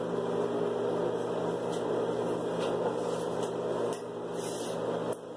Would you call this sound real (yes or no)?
yes